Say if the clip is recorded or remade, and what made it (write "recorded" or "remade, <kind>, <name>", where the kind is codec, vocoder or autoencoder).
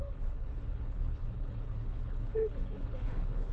remade, codec, HILCodec